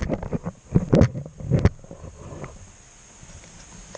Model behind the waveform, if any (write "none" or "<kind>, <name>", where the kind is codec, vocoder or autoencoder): none